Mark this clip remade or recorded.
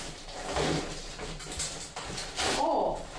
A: remade